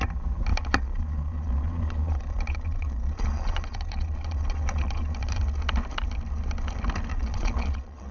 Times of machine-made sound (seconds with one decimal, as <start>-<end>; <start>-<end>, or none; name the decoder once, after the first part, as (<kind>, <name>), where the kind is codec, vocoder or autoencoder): 0.5-5.4 (vocoder, Vocos); 7.1-8.1